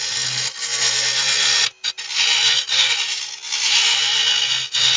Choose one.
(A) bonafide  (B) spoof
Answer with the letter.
A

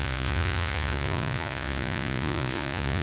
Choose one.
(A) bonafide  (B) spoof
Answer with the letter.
B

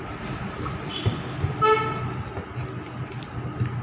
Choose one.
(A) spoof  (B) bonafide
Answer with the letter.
B